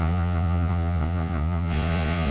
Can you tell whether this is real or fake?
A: fake